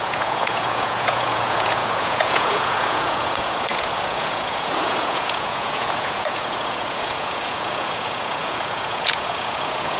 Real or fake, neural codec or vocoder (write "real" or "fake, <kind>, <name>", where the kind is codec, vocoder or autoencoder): fake, vocoder, Vocos